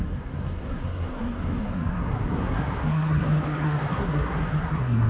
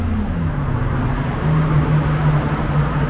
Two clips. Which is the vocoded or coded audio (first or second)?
first